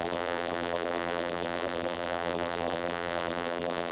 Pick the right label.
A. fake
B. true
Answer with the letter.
A